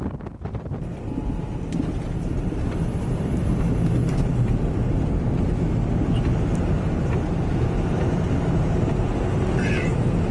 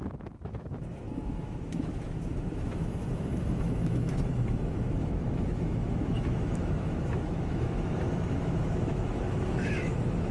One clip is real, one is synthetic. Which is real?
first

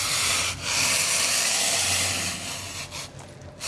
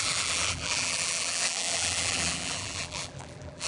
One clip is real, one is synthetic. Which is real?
first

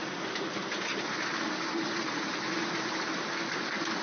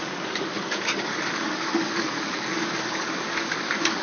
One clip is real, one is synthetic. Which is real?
first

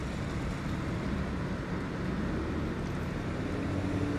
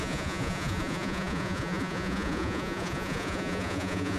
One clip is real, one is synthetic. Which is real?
first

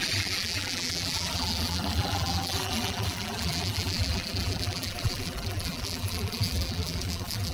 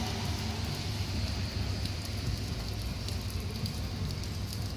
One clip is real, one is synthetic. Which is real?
second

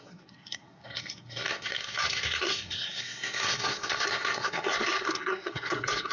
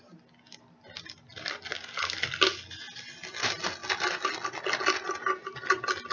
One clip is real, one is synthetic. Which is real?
second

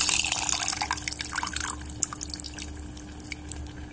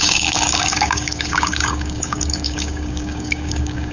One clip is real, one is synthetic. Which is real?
first